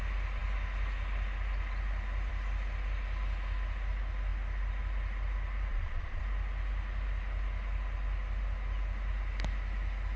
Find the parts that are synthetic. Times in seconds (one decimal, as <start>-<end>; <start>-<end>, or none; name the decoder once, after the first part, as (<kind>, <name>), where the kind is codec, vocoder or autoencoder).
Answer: 5.7-6.2 (vocoder, Vocos)

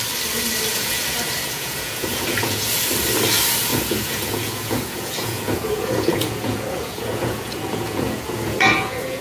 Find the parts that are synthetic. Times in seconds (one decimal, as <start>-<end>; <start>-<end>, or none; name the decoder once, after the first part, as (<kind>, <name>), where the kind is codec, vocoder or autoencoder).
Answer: 0.7-2.7 (vocoder, Vocos); 3.7-9.2

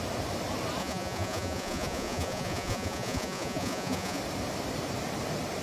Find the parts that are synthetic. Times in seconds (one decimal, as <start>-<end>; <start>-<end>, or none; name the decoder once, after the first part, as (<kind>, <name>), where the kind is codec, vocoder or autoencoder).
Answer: 0.8-4.2 (vocoder, Vocos)